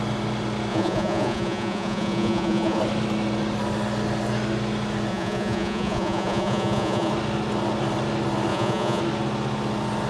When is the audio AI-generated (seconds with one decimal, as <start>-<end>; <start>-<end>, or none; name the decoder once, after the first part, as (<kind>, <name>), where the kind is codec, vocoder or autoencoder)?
0.7-2.8 (vocoder, Vocos); 5.1-7.1; 8.5-9.0